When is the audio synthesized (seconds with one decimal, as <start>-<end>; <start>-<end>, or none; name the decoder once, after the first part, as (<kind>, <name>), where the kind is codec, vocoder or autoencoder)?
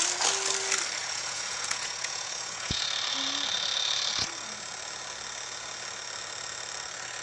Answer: 1.0-2.8 (vocoder, Vocos)